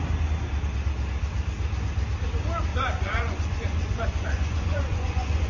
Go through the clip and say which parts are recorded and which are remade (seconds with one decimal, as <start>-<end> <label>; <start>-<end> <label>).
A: 0.0-2.7 recorded; 2.7-5.5 remade